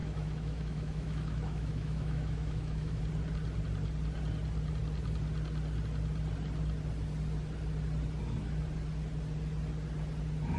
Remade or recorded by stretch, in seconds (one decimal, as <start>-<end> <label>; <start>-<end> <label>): 0.0-3.0 remade; 3.0-10.6 recorded

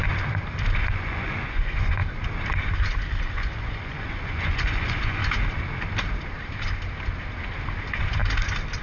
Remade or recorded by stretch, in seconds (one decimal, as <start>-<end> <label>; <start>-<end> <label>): 0.0-0.9 recorded; 0.9-2.0 remade; 2.0-3.2 recorded; 3.2-5.2 remade; 5.2-8.8 recorded

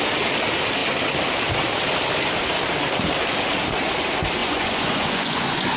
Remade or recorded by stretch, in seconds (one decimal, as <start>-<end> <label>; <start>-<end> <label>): 0.0-4.4 recorded; 4.4-5.8 remade

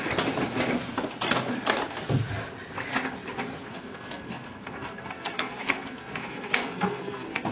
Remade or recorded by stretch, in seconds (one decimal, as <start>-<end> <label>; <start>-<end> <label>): 0.0-3.6 recorded; 3.6-7.5 remade